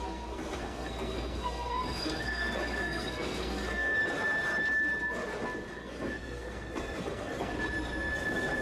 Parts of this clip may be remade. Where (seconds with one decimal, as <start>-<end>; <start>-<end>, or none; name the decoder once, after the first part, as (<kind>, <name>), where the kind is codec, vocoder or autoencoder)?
0.0-4.0 (codec, SNAC); 5.7-7.5

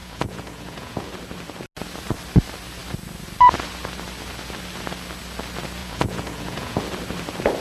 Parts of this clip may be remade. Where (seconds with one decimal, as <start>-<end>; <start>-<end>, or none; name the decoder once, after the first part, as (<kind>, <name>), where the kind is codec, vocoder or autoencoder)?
0.0-1.1 (vocoder, Vocos); 5.8-6.8